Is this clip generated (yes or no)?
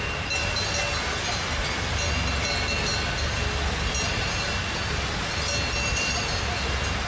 no